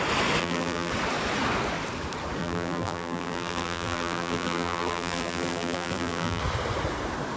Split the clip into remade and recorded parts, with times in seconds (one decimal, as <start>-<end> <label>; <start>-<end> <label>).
0.0-0.4 recorded; 0.4-0.9 remade; 0.9-2.4 recorded; 2.4-6.4 remade; 6.4-7.4 recorded